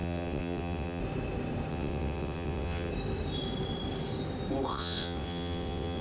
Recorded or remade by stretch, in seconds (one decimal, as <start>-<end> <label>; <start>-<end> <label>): 0.0-1.0 remade; 1.0-1.7 recorded; 1.7-2.9 remade; 2.9-4.7 recorded; 4.7-6.0 remade